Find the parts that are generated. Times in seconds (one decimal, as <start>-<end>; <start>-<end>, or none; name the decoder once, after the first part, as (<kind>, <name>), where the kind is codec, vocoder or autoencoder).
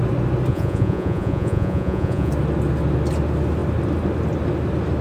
0.5-2.3 (vocoder, Vocos)